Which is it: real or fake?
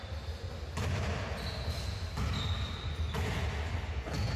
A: real